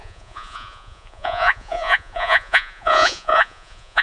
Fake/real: fake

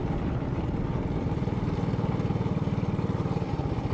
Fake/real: real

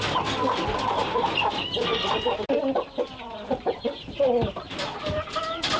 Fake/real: real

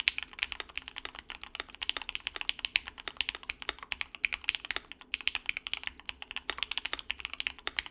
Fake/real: real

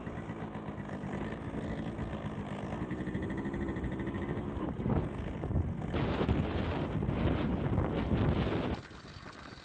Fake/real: real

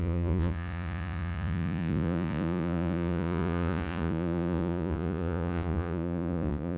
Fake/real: fake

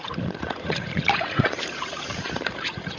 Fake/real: fake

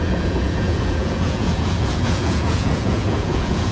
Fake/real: fake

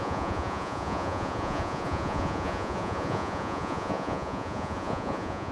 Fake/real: fake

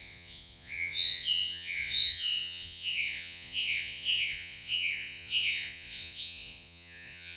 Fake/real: fake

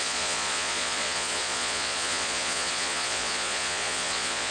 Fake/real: fake